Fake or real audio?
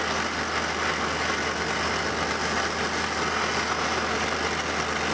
real